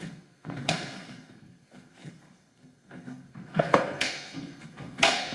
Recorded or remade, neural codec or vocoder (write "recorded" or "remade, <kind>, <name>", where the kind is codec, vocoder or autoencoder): remade, codec, SNAC